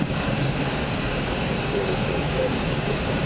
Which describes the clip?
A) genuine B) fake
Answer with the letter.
B